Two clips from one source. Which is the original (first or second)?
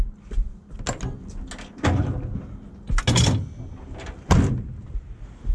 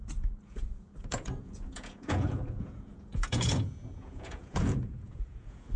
first